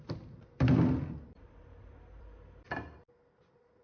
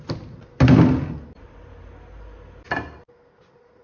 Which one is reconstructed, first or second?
first